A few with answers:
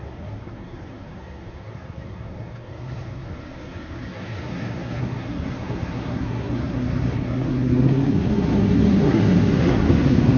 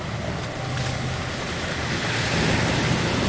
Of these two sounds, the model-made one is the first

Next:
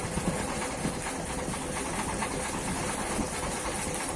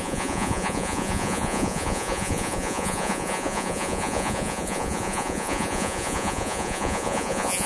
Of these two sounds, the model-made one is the second